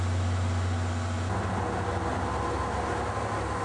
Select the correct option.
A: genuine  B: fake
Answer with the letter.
A